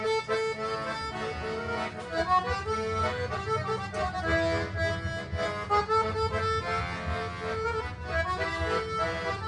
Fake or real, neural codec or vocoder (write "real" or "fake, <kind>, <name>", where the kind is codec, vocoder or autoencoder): real